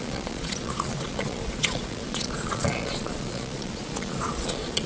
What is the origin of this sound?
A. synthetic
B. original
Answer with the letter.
A